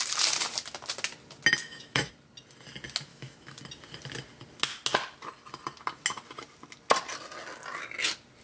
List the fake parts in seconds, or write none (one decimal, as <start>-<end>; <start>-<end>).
1.6-2.1; 3.1-3.6